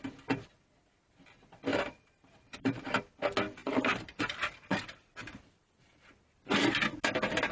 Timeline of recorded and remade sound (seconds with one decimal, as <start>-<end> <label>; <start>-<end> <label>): 0.0-1.7 recorded; 1.7-3.0 remade; 3.0-3.6 recorded; 3.6-4.8 remade; 4.8-7.5 recorded